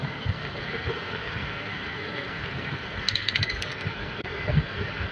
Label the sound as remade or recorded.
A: remade